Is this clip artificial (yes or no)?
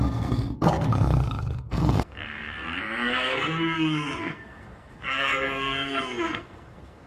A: yes